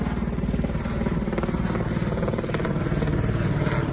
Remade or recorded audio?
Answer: remade